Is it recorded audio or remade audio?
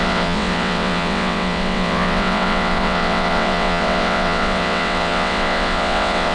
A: remade